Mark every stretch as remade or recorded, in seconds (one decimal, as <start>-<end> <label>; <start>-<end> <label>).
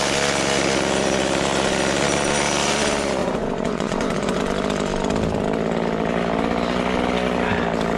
0.0-3.2 recorded; 3.2-4.4 remade; 4.4-8.0 recorded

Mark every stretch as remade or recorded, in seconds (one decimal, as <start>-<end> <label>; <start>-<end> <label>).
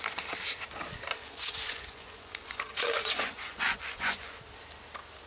0.0-1.2 recorded; 1.2-4.4 remade; 4.4-5.3 recorded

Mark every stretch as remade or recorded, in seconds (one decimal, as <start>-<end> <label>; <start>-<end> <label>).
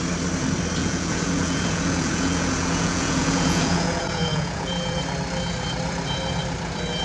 0.0-0.8 recorded; 0.8-5.0 remade; 5.0-7.0 recorded